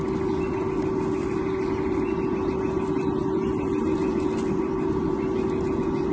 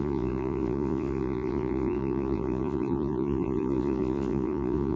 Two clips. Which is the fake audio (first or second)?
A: second